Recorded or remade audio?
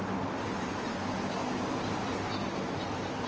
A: recorded